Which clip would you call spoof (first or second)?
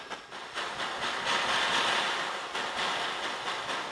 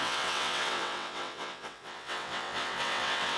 second